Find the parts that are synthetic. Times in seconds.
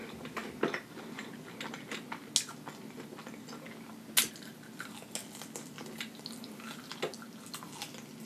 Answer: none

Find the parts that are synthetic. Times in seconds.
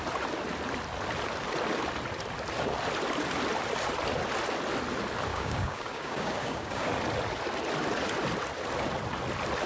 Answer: 5.3-6.9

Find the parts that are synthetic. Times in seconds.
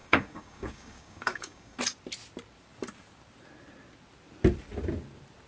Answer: 0.0-1.8